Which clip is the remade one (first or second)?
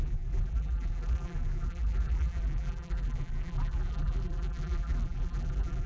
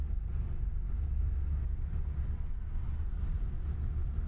first